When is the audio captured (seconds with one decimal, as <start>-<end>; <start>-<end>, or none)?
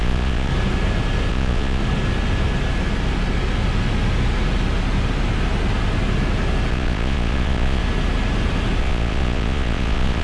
0.5-1.3; 1.8-6.7; 7.8-8.8